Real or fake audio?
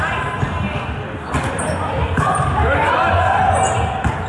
real